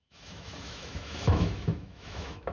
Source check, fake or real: fake